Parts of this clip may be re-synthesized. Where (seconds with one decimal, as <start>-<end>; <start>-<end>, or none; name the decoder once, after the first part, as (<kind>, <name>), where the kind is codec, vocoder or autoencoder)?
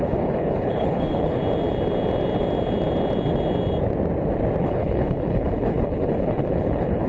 0.0-1.4 (codec, HILCodec); 4.6-7.1